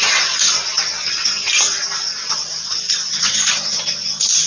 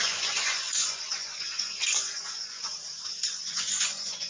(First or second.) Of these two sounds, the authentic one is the first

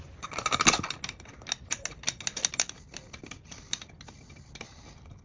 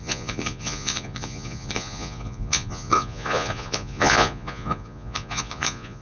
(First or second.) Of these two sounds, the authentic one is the first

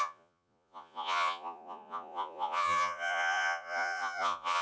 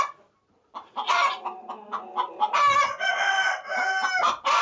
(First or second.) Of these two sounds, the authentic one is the second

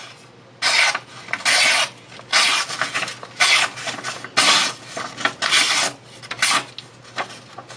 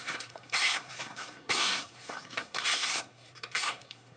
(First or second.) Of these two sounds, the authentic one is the first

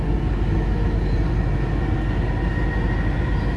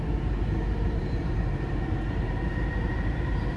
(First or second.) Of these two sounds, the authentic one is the first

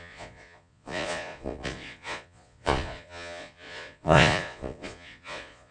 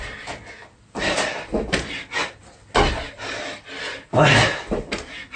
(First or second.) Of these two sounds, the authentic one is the second